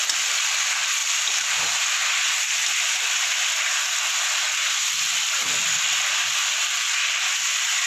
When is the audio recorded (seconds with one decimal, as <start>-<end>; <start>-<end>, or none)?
0.0-1.0; 1.7-7.9